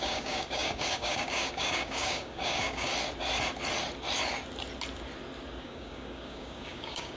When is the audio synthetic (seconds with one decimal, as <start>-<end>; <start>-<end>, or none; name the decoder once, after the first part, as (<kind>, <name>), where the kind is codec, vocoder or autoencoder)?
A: 0.0-2.9 (codec, DAC); 5.6-7.2